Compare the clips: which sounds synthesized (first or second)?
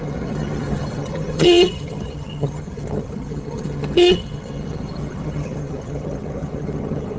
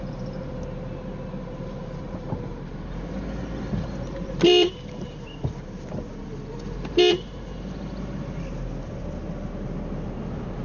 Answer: first